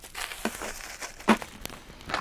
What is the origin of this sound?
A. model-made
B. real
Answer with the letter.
B